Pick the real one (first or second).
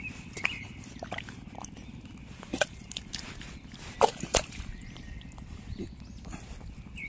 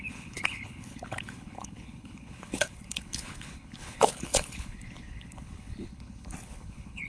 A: first